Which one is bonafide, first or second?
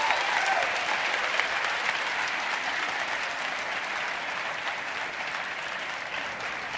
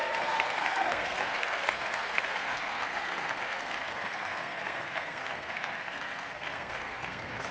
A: first